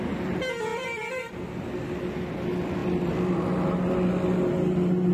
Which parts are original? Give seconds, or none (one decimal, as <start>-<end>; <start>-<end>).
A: 0.0-0.7; 1.3-5.1